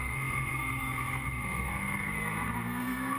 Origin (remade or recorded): remade